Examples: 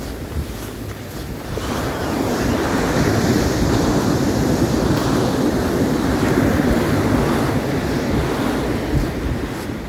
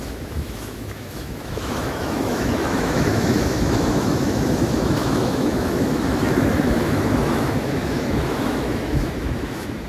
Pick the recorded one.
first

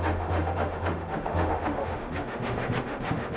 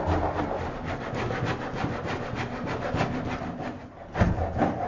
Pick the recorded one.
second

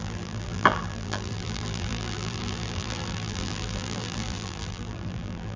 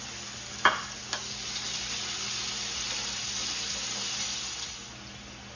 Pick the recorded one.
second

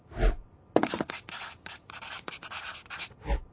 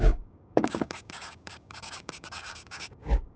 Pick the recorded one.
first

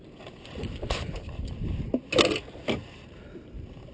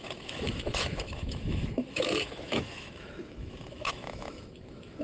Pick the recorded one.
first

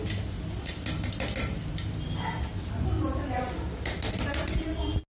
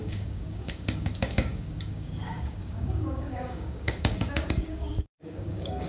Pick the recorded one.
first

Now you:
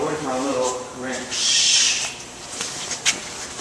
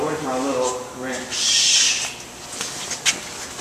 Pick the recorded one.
second